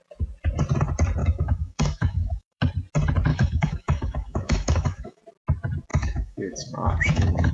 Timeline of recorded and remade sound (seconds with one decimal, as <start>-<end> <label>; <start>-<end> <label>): 0.0-1.2 recorded; 1.2-2.6 remade; 2.6-3.3 recorded; 3.3-5.2 remade; 5.2-5.9 recorded; 5.9-7.5 remade